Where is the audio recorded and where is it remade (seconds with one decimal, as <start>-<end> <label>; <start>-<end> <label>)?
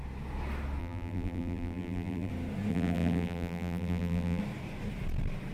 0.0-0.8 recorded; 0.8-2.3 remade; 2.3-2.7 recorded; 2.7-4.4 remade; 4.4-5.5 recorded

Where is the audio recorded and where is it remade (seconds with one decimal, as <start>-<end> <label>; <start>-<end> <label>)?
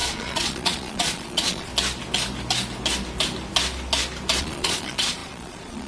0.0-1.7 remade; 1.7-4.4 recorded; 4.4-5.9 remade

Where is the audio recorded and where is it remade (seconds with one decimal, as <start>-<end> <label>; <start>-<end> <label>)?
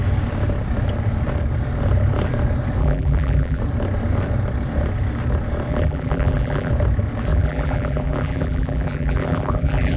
0.0-2.8 recorded; 2.8-3.6 remade; 3.6-5.7 recorded; 5.7-6.7 remade; 6.7-7.3 recorded; 7.3-10.0 remade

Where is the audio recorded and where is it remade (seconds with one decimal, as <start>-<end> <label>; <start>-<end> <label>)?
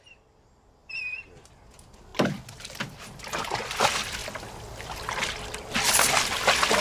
0.0-0.8 recorded; 0.8-1.5 remade; 1.5-2.1 recorded; 2.1-2.6 remade; 2.6-6.8 recorded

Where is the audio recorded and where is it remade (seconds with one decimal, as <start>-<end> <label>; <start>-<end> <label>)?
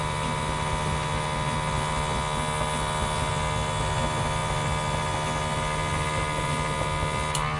0.0-7.6 recorded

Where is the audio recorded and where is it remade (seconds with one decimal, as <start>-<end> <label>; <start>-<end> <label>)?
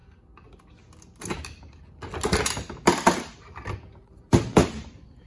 0.0-2.3 recorded; 2.3-5.3 remade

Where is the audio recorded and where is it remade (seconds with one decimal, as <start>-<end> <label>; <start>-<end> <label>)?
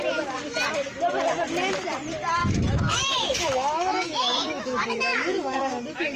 0.0-2.4 recorded; 2.4-6.2 remade